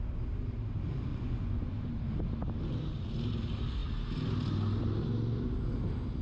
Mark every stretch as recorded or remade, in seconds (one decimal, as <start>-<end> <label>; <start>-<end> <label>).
0.0-1.1 recorded; 1.1-1.9 remade; 1.9-6.2 recorded